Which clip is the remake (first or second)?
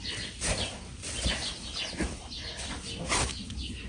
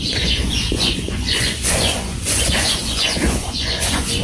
second